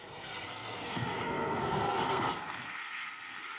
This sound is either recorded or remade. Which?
remade